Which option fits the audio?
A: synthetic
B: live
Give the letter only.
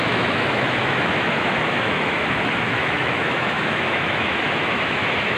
A